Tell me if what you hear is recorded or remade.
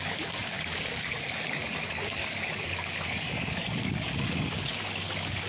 remade